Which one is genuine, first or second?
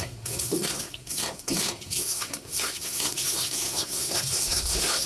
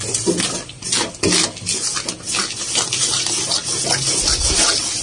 second